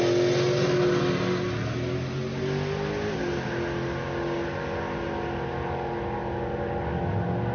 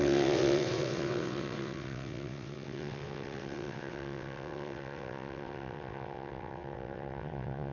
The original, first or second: first